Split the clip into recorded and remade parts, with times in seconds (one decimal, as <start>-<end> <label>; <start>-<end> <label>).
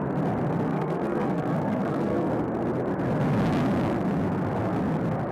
0.0-0.7 recorded; 0.7-2.3 remade; 2.3-5.3 recorded